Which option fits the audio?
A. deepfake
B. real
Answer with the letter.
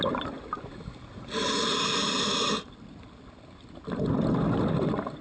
B